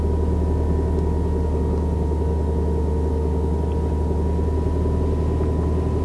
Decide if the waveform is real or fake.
real